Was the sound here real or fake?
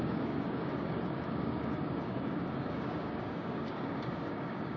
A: fake